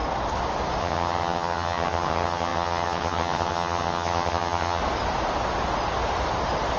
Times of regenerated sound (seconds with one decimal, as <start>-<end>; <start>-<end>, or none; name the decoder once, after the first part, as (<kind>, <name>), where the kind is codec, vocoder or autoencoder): 0.8-4.8 (vocoder, HiFi-GAN)

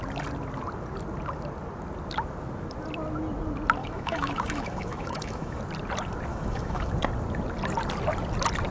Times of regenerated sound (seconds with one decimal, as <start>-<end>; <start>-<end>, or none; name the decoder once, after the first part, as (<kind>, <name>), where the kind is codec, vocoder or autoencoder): 3.8-5.6 (autoencoder, DAC-VAE); 6.3-6.9

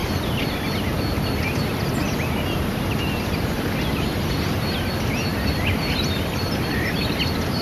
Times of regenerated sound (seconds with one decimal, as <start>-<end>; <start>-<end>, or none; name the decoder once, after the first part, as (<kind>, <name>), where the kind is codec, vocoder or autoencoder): 5.3-7.0 (vocoder, BigVGAN v2)

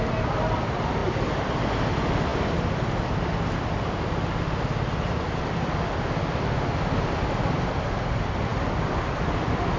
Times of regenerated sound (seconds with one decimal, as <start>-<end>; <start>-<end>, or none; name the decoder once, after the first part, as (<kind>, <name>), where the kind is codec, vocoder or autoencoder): none

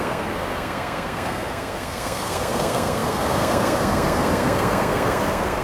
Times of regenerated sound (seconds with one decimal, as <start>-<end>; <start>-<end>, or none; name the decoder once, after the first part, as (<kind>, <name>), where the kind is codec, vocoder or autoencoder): 0.0-5.6 (codec, SNAC)